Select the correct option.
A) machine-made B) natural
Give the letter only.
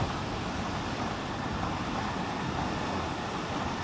B